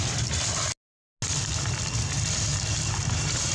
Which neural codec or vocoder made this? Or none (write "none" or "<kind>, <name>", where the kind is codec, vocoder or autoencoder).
none